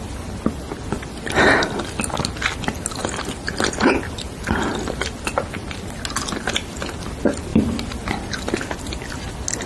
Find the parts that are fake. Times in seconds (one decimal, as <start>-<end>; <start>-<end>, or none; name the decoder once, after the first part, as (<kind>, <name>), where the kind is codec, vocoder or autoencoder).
none